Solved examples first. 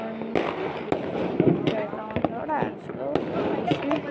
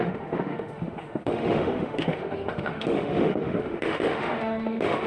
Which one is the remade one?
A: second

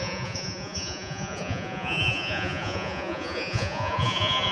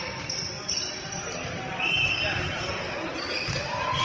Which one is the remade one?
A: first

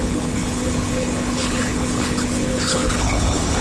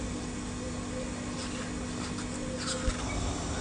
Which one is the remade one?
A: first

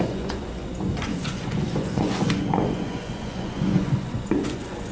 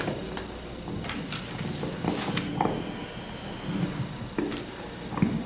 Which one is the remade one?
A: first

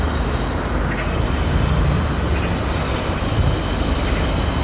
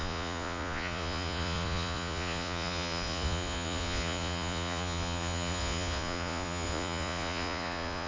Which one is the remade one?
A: second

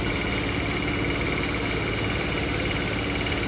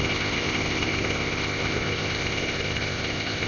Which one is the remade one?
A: second